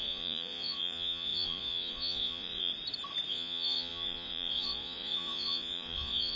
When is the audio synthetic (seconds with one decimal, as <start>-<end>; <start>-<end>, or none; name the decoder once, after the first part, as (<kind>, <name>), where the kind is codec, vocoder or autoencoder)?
0.0-2.7 (vocoder, Vocos); 3.3-6.4